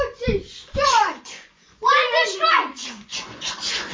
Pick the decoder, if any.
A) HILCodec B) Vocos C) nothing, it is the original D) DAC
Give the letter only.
B